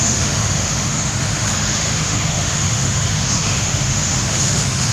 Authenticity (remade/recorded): remade